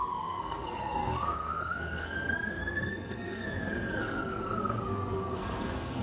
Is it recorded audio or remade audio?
remade